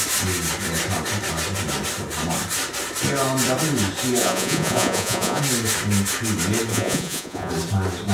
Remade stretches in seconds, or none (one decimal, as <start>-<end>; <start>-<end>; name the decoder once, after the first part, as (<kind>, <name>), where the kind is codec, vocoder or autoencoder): 4.2-5.4 (vocoder, Vocos); 6.7-7.5